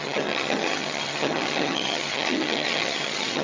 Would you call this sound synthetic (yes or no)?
yes